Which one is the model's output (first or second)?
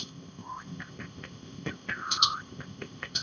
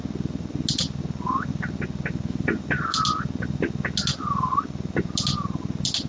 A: first